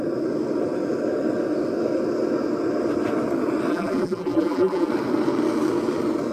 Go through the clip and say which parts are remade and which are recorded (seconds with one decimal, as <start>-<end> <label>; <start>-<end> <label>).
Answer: 0.0-3.7 recorded; 3.7-4.9 remade; 4.9-6.3 recorded